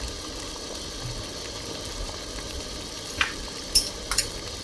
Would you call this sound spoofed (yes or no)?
no